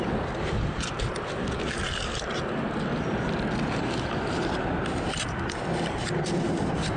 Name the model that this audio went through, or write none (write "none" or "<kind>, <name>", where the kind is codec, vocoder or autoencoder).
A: none